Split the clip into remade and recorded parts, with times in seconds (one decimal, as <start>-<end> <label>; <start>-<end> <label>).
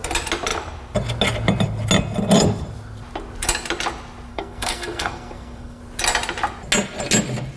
0.0-4.3 recorded; 4.3-5.8 remade; 5.8-7.6 recorded